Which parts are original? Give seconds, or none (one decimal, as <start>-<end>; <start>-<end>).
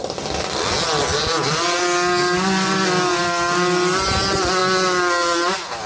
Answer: 0.0-5.9